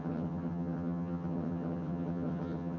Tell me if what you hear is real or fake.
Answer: fake